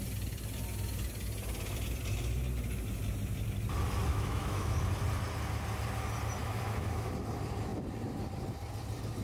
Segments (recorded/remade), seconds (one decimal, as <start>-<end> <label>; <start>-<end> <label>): 0.0-4.1 recorded; 4.1-4.8 remade; 4.8-6.4 recorded; 6.4-7.1 remade; 7.1-9.2 recorded